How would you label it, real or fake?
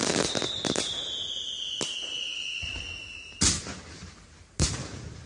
real